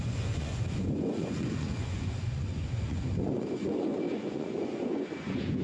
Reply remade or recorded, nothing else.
remade